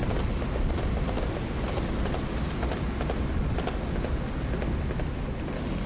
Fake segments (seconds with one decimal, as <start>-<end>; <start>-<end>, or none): none

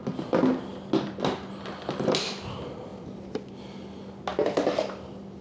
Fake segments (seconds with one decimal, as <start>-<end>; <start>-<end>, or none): 2.9-3.5; 4.3-5.4

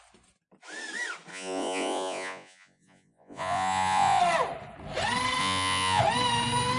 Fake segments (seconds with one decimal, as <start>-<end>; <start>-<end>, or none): 1.3-4.2; 5.4-6.0

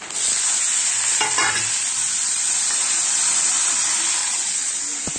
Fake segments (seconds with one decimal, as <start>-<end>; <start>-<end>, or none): 4.2-4.8

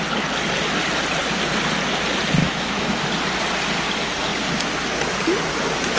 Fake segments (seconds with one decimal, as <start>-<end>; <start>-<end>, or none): 2.4-3.0

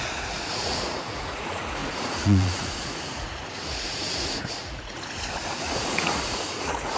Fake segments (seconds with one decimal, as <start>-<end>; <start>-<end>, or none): 0.0-7.0